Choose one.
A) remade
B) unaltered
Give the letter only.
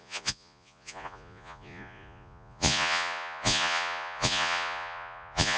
A